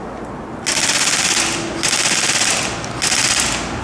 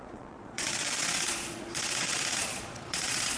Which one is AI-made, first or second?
second